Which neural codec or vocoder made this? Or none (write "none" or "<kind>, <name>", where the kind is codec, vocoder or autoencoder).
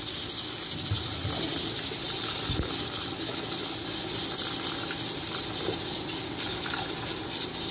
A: none